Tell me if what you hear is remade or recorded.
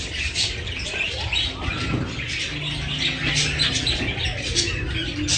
recorded